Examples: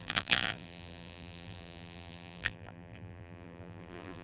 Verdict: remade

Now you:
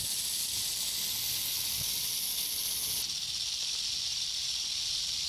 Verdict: recorded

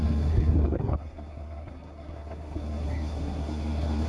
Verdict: remade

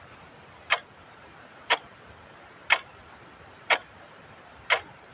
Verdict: recorded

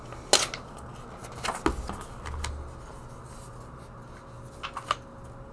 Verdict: recorded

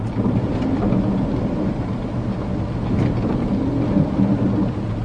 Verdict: recorded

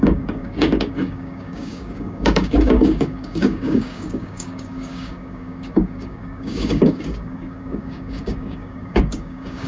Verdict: remade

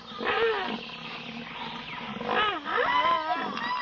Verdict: recorded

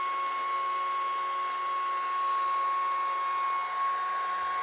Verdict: recorded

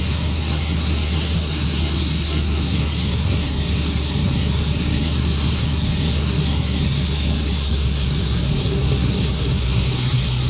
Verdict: remade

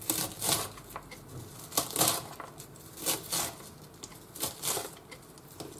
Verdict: recorded